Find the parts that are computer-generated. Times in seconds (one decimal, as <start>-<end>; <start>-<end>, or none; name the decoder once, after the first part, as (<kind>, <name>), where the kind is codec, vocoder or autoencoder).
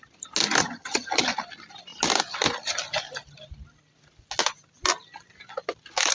0.6-1.2 (vocoder, HiFi-GAN)